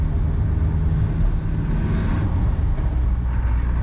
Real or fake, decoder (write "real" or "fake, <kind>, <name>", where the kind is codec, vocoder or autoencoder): real